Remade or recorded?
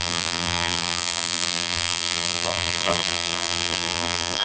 remade